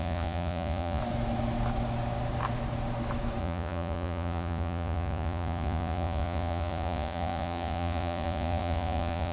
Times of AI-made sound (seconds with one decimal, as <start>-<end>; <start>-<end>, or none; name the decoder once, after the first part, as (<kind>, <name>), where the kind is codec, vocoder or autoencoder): 0.0-1.0 (vocoder, Vocos); 3.4-9.3